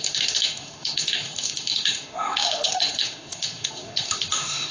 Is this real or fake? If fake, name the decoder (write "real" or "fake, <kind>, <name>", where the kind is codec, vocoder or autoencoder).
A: fake, autoencoder, DAC-VAE